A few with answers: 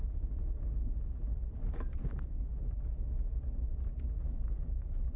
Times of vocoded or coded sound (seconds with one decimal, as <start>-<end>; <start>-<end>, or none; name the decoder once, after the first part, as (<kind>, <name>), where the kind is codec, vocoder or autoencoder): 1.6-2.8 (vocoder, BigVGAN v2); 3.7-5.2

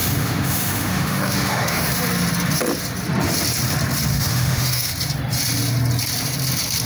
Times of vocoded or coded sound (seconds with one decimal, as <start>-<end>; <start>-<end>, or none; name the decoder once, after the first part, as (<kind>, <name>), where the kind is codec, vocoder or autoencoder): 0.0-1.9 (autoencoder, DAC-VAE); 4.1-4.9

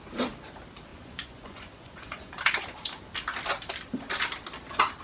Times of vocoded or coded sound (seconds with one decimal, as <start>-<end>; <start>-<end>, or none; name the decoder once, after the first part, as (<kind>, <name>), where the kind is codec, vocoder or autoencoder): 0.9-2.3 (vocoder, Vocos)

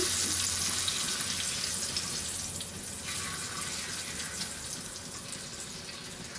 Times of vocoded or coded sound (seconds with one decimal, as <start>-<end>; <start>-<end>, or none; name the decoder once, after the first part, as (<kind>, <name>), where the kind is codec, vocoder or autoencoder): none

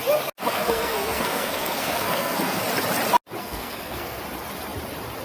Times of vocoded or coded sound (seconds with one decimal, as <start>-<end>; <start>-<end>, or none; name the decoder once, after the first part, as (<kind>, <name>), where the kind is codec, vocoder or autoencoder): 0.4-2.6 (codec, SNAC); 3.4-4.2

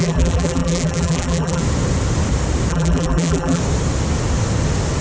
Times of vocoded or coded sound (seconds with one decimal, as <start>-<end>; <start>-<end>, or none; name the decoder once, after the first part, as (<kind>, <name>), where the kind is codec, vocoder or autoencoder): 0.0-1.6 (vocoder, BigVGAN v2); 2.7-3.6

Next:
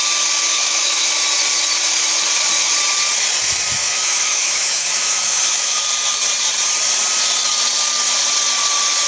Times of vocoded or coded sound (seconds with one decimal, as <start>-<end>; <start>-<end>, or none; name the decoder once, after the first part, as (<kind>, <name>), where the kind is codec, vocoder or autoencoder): 0.5-1.1 (autoencoder, DAC-VAE); 3.8-5.8